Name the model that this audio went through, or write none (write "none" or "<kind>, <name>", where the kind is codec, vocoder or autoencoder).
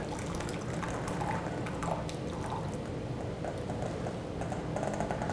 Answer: none